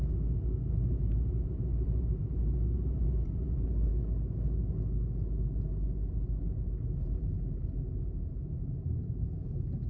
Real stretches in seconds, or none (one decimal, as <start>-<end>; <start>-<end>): 0.0-0.7; 3.9-8.2